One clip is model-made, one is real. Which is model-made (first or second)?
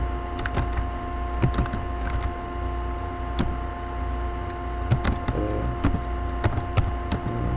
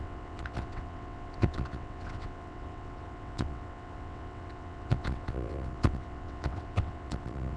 second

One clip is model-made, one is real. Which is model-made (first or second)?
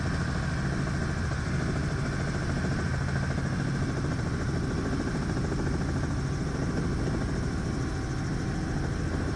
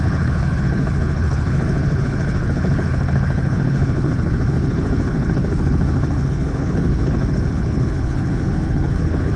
second